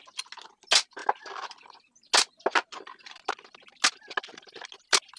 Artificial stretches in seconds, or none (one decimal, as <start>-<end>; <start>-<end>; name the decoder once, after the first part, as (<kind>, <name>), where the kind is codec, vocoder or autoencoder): none